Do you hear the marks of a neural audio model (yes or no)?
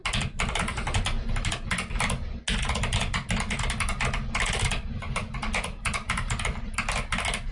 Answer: no